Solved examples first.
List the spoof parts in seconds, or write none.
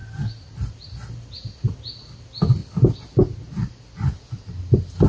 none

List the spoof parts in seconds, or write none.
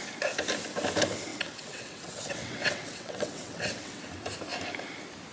1.3-4.0 (vocoder, WaveNeXt)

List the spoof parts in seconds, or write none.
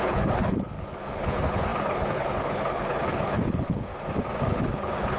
0.0-3.9 (codec, HILCodec); 4.4-5.2